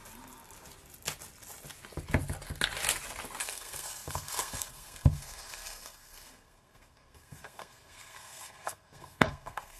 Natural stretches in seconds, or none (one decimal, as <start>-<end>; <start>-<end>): 0.0-3.4